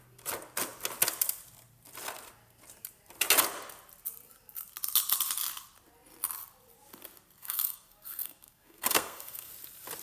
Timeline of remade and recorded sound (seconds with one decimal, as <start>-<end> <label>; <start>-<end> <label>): 0.0-7.4 recorded; 7.4-9.5 remade; 9.5-10.0 recorded